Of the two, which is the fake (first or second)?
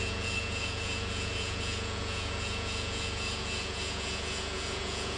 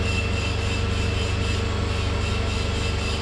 first